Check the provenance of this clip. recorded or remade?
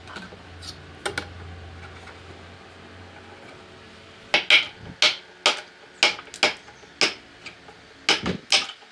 recorded